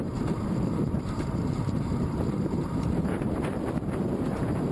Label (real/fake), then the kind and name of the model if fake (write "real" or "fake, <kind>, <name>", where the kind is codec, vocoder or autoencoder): fake, vocoder, BigVGAN v2